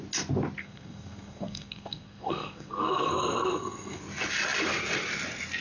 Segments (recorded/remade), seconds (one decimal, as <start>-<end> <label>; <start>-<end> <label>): 0.0-0.6 recorded; 0.6-4.0 remade; 4.0-5.6 recorded